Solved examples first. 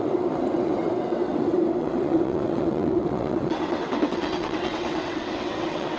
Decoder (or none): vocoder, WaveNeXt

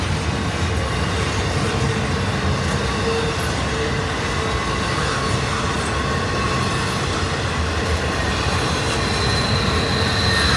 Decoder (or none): none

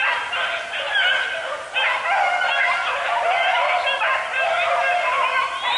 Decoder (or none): none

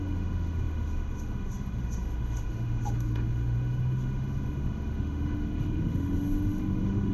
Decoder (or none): autoencoder, DAC-VAE